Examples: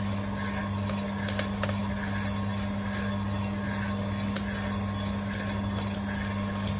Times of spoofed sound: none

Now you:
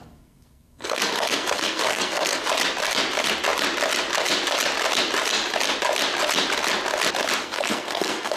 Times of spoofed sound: 0.0-2.5 (codec, SNAC); 7.4-8.4

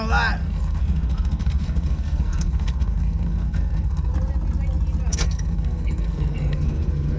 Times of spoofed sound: 0.4-4.1 (codec, SNAC); 5.1-7.2

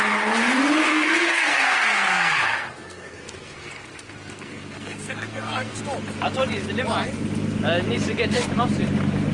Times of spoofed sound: 0.9-5.8 (codec, SNAC)

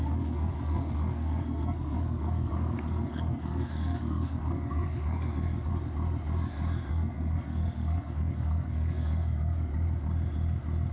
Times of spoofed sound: 0.0-5.7 (codec, SNAC); 6.9-9.7

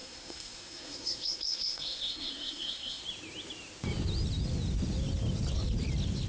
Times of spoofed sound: 0.0-3.0 (codec, SNAC)

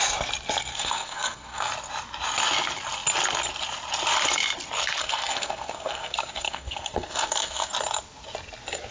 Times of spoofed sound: 0.7-1.7 (codec, SNAC); 5.0-7.7